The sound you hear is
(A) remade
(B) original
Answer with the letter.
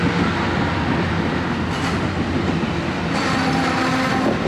B